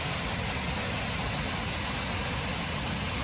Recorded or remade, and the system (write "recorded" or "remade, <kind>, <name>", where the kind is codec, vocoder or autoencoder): recorded